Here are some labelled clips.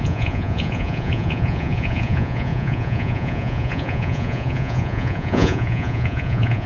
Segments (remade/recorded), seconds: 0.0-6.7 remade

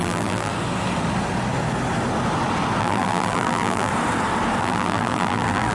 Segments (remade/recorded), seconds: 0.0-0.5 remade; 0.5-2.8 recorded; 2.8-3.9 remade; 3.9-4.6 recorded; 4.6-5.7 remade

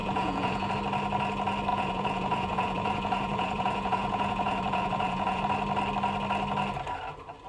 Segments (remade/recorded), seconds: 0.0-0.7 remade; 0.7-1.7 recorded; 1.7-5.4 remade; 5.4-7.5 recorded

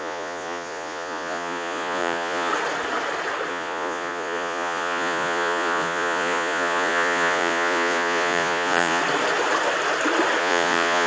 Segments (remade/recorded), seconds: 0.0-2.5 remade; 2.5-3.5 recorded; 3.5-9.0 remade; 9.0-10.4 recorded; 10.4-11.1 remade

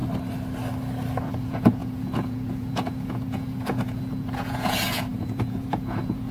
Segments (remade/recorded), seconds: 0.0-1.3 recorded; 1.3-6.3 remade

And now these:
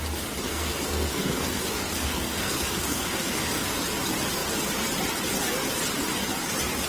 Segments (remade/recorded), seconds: 0.0-0.5 recorded; 0.5-3.8 remade; 3.8-6.9 recorded